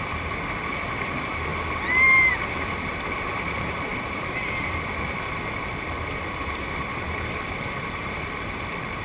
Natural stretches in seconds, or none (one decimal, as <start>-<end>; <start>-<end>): 1.5-2.3

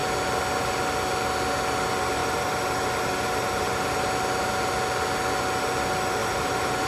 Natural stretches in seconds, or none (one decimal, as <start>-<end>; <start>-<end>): 0.0-2.2; 4.1-6.2

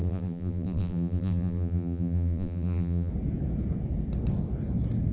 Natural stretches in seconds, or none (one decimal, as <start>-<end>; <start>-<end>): 3.1-5.1

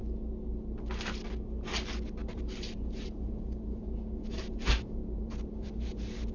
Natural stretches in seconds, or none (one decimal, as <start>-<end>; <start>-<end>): 0.0-2.2

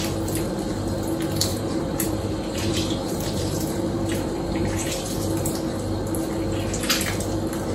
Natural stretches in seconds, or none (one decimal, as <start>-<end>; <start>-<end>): 0.0-1.5; 4.7-7.7

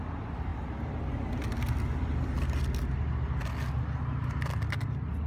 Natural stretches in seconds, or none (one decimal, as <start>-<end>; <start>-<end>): 0.0-5.3

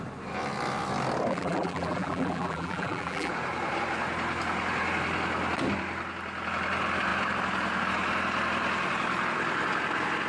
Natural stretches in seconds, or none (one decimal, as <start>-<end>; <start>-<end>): 0.0-1.3; 3.3-10.3